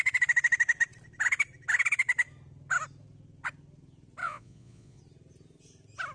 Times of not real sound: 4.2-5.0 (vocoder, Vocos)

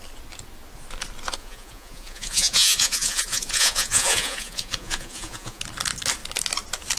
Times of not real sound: 1.4-5.6 (vocoder, Vocos)